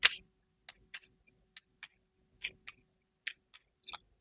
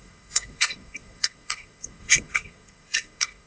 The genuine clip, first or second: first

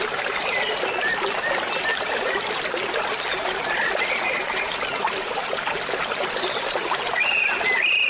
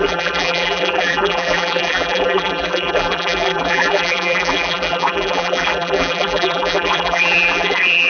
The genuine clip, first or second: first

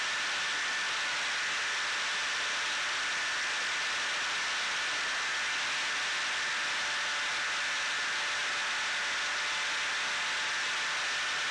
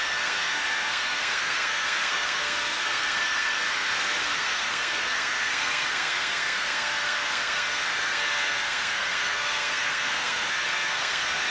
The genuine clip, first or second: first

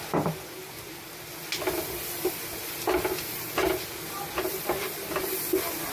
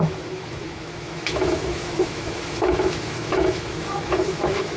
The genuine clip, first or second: first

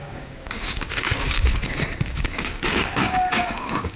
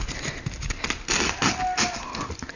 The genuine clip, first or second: second